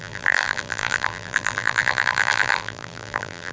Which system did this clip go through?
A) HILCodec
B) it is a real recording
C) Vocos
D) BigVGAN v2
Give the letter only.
D